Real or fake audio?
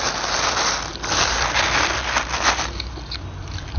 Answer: real